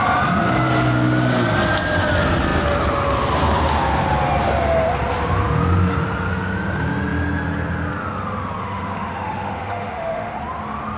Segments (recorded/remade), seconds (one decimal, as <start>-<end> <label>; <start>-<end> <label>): 0.0-8.6 recorded; 8.6-10.3 remade; 10.3-11.0 recorded